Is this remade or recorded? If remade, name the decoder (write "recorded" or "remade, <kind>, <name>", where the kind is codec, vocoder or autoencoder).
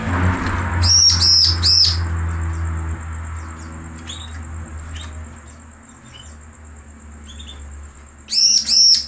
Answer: recorded